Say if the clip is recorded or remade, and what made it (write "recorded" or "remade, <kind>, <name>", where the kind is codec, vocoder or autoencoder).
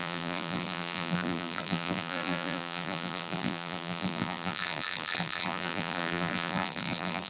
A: remade, vocoder, BigVGAN v2